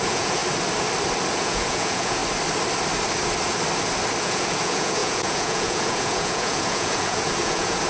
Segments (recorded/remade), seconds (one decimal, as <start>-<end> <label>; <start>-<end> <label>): 0.0-0.4 remade; 0.4-1.3 recorded; 1.3-2.2 remade; 2.2-4.2 recorded; 4.2-7.9 remade